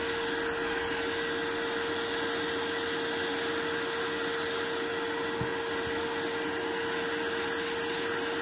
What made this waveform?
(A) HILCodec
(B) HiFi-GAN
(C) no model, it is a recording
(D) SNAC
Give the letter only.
C